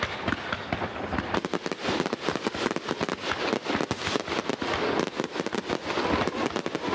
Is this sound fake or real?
real